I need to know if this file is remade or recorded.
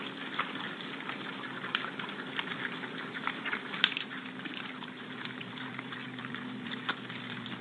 remade